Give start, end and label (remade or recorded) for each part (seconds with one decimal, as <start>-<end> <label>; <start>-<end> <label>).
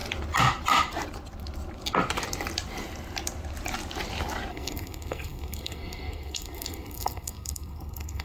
0.0-4.5 recorded; 4.5-8.2 remade